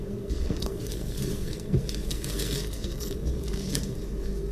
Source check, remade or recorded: remade